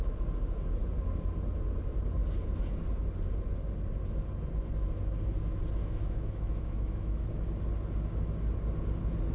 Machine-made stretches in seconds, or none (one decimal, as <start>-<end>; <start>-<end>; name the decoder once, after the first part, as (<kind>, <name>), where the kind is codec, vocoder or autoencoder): 5.8-7.3 (autoencoder, DAC-VAE)